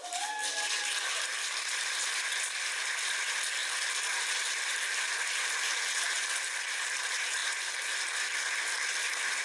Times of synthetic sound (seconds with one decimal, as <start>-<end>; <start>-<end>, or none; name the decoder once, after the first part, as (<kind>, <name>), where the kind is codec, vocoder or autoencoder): none